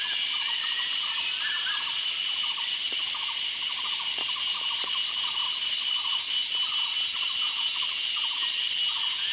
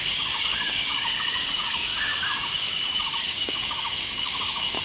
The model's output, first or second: second